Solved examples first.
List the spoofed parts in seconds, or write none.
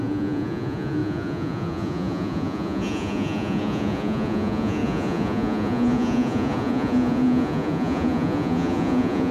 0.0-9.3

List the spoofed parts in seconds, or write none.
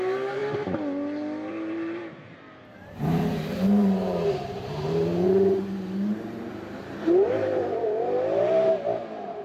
0.0-0.4; 1.5-9.4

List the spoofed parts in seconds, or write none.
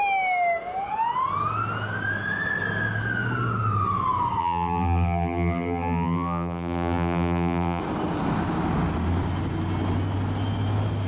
4.4-7.8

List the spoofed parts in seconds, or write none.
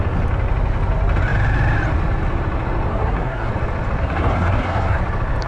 2.9-3.5; 4.0-5.0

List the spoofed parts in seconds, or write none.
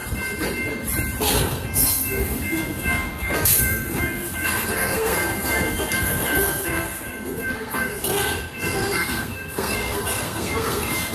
1.2-11.1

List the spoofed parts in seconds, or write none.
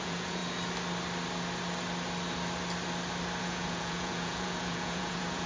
0.0-0.4; 3.4-5.5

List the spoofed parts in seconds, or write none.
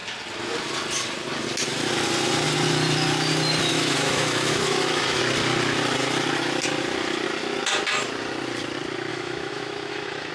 3.7-5.2; 9.1-10.3